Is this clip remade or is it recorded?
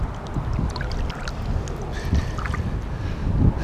recorded